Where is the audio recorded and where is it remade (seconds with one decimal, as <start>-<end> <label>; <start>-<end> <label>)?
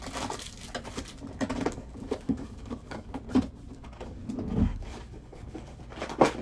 0.0-1.5 recorded; 1.5-3.2 remade; 3.2-3.7 recorded; 3.7-4.3 remade; 4.3-4.7 recorded; 4.7-5.8 remade; 5.8-6.4 recorded